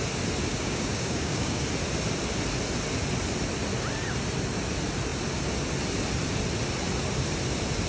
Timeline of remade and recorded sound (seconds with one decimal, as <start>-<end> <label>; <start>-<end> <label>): 0.0-0.5 recorded; 0.5-1.6 remade; 1.6-7.9 recorded